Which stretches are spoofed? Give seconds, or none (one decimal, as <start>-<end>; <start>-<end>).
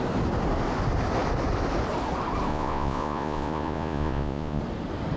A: 2.5-4.6